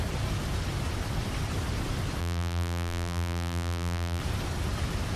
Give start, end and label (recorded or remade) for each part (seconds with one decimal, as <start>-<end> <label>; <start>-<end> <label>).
0.0-2.2 recorded; 2.2-4.2 remade; 4.2-5.2 recorded